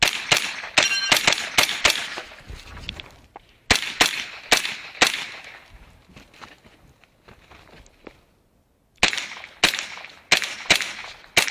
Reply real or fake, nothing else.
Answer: real